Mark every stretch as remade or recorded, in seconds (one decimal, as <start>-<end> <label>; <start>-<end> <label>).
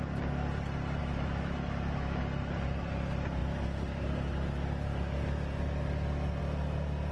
0.0-1.0 recorded; 1.0-2.2 remade; 2.2-7.1 recorded